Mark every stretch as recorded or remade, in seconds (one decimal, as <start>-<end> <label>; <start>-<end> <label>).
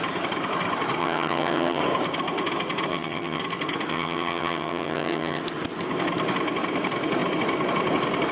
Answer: 0.0-1.0 recorded; 1.0-1.8 remade; 1.8-2.9 recorded; 2.9-3.4 remade; 3.4-3.9 recorded; 3.9-5.4 remade; 5.4-8.3 recorded